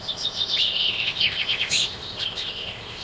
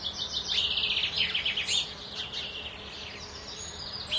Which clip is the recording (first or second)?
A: second